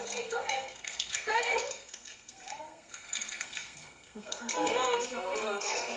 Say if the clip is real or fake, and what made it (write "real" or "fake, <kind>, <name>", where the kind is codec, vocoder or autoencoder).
fake, codec, SNAC